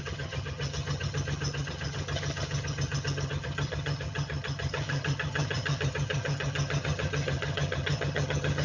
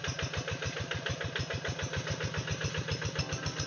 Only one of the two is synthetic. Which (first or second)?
first